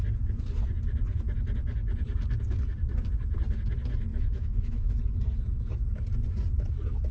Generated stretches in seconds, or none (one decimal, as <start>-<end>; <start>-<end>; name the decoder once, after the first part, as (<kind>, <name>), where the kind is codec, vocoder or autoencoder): 4.1-4.9 (autoencoder, DAC-VAE)